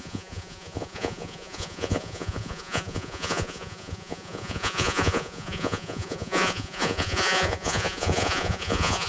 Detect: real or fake fake